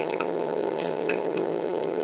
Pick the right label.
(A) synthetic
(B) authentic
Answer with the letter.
A